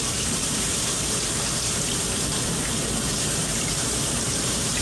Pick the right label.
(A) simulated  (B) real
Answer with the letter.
A